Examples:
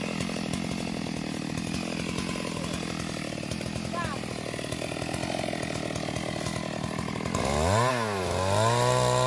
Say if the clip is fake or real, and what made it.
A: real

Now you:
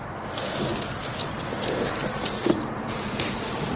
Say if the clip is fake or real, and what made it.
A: real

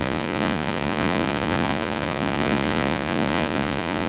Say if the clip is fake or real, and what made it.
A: fake, vocoder, Vocos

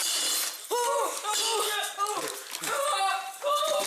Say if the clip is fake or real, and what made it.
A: real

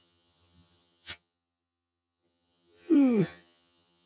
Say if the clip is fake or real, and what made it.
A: fake, vocoder, HiFi-GAN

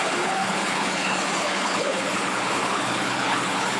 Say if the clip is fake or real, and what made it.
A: fake, codec, HILCodec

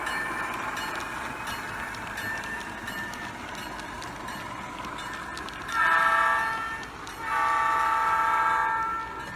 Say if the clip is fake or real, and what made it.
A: real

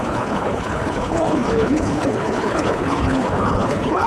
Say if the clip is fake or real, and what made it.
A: fake, codec, HILCodec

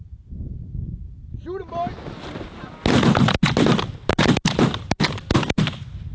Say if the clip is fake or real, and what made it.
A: real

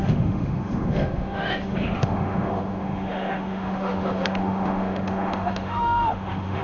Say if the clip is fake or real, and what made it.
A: fake, autoencoder, DAC-VAE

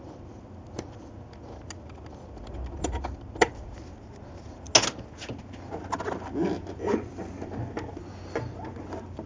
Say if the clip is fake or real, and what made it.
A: real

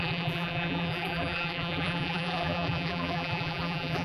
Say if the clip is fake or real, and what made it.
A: fake, vocoder, BigVGAN v2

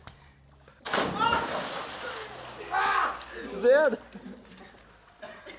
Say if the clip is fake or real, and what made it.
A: real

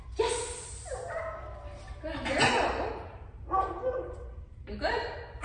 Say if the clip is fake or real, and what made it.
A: fake, vocoder, BigVGAN v2